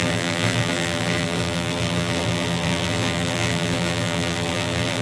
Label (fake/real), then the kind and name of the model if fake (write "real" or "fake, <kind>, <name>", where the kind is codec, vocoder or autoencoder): fake, vocoder, BigVGAN v2